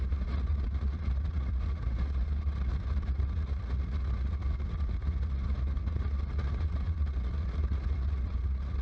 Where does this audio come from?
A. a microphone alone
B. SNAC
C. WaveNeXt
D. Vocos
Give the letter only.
D